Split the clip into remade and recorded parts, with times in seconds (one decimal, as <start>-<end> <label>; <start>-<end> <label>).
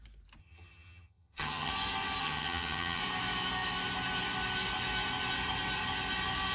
0.0-0.4 recorded; 0.4-1.7 remade; 1.7-2.2 recorded; 2.2-3.0 remade; 3.0-6.5 recorded